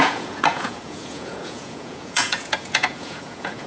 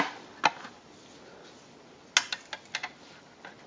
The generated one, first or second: first